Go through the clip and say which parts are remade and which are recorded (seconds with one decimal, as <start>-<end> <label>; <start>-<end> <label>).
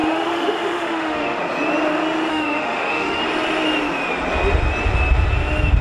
0.0-1.4 remade; 1.4-2.3 recorded; 2.3-3.2 remade; 3.2-5.8 recorded